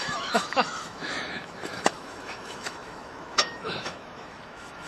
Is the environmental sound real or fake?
fake